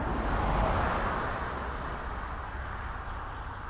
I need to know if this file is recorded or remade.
recorded